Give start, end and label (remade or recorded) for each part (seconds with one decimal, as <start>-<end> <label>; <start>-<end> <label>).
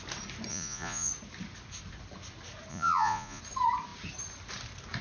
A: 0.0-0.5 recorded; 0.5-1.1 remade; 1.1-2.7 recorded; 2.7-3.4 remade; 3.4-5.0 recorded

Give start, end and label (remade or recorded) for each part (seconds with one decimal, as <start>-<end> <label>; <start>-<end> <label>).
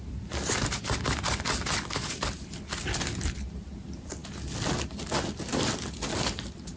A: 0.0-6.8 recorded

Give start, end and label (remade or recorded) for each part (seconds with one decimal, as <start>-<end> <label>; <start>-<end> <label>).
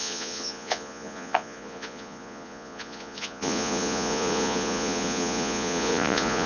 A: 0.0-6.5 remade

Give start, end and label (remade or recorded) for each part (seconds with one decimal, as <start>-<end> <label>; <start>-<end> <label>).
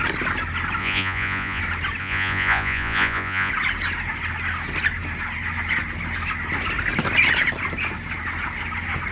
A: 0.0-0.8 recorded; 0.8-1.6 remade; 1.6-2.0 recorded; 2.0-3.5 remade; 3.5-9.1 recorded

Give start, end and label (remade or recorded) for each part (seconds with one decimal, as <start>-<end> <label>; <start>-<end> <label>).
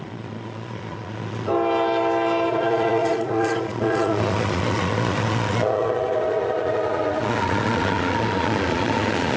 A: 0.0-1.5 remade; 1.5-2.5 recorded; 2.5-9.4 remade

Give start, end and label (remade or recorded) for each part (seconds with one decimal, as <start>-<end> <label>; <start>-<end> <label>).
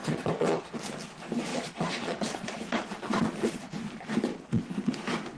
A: 0.0-0.7 remade; 0.7-1.5 recorded; 1.5-3.8 remade; 3.8-4.3 recorded; 4.3-4.9 remade; 4.9-5.4 recorded